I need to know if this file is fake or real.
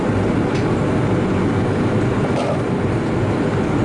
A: real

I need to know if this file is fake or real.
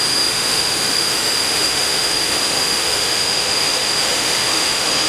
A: fake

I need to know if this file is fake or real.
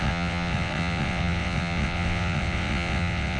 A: fake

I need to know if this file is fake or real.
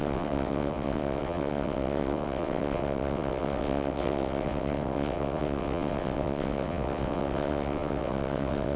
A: fake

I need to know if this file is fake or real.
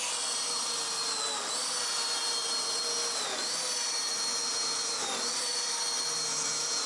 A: real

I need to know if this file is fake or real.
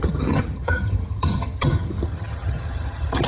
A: fake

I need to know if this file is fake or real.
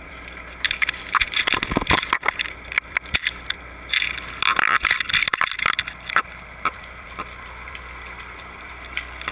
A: fake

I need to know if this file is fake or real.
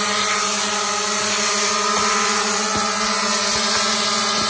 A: real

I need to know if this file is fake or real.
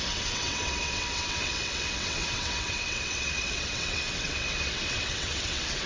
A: fake